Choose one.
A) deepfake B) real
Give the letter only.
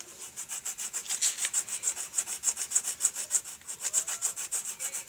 B